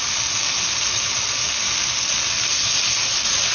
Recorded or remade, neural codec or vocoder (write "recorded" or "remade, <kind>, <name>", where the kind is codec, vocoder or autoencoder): recorded